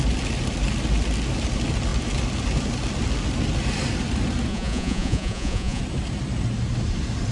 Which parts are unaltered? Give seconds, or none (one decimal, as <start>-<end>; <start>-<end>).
0.0-4.5; 5.8-7.3